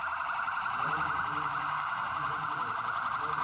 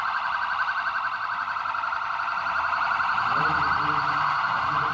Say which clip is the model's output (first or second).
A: first